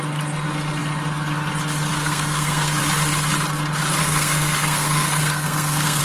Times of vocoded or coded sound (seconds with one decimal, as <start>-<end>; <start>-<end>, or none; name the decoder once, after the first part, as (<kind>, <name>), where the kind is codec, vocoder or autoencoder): 1.9-2.8 (codec, SNAC); 4.0-6.0